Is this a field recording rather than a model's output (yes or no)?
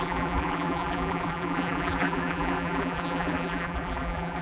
no